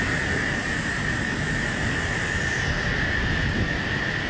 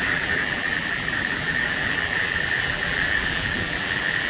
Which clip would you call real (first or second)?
first